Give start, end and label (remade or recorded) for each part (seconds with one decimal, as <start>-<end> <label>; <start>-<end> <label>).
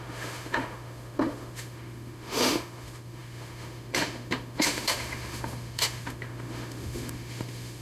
0.0-7.8 remade